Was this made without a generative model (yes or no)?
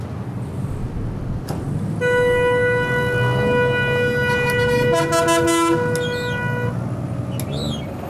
yes